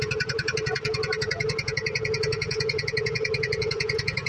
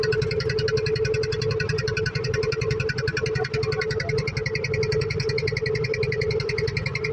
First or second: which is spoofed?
first